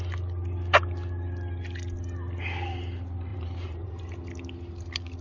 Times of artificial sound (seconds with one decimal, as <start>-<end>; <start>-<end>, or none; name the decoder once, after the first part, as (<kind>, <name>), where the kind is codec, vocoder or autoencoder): 3.3-3.9 (vocoder, BigVGAN v2)

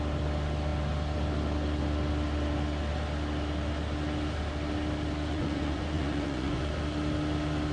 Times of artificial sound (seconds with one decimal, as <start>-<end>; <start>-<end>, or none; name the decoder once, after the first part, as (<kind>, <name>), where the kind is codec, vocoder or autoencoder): 5.3-6.7 (vocoder, Vocos)

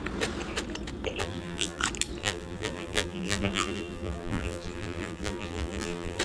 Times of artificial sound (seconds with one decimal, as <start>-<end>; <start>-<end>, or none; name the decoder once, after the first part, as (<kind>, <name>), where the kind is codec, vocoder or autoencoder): 1.2-1.8 (vocoder, BigVGAN v2); 2.2-6.2